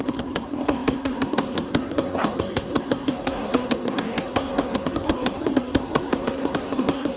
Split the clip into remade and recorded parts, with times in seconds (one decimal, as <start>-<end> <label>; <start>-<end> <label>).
0.0-7.2 remade